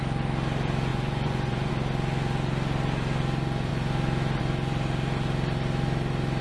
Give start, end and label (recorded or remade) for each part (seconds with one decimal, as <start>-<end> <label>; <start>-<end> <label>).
0.0-0.9 recorded; 0.9-1.7 remade; 1.7-6.4 recorded